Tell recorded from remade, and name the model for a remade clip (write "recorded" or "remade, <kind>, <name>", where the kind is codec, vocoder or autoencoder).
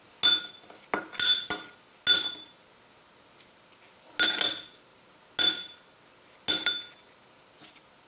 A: recorded